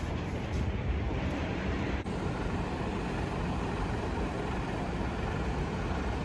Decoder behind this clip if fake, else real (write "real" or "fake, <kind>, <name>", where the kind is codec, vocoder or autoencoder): fake, vocoder, BigVGAN v2